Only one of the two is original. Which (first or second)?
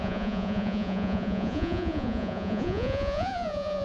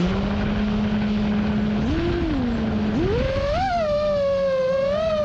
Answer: second